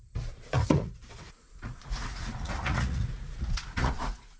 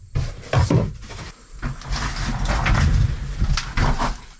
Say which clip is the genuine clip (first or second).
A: second